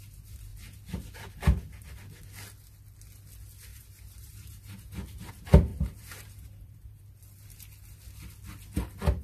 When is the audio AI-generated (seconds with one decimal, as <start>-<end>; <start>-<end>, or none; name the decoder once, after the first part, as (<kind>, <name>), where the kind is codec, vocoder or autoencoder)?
3.7-5.3 (vocoder, BigVGAN v2); 5.7-7.0